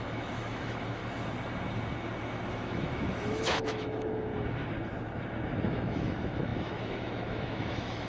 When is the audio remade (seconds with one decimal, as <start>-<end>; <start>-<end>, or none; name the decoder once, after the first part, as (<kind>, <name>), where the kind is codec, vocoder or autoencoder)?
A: 0.0-1.0 (autoencoder, DAC-VAE); 2.5-4.3; 5.7-8.1